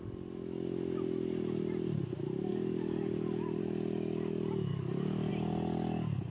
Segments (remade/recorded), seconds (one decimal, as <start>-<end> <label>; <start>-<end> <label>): 0.0-2.5 recorded; 2.5-3.6 remade; 3.6-4.7 recorded; 4.7-5.3 remade; 5.3-6.3 recorded